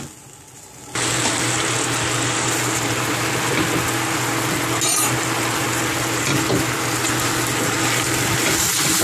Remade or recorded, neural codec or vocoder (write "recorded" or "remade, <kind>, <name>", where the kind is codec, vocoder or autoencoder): recorded